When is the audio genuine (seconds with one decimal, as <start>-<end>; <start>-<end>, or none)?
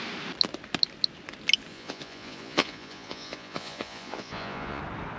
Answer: 0.0-1.7; 4.8-5.2